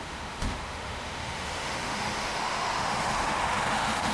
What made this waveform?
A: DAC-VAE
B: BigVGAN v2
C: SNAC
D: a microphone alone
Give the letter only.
A